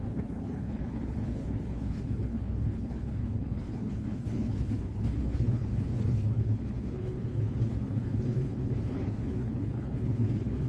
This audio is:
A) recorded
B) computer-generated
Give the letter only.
B